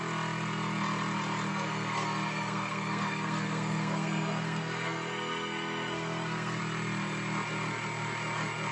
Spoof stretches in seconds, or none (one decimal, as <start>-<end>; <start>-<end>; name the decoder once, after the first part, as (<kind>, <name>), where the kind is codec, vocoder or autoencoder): 1.5-6.6 (codec, SNAC)